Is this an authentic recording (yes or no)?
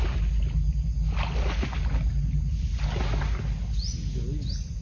yes